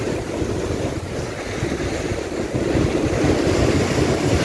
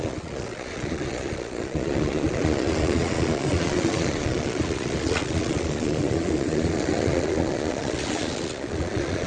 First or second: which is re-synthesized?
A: second